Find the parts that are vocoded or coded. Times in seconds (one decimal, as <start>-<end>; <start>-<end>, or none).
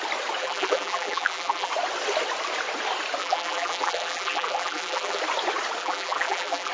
0.4-1.7; 3.2-5.2; 5.8-6.7